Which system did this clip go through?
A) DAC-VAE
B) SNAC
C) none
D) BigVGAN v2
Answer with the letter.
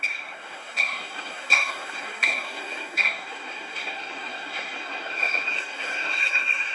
B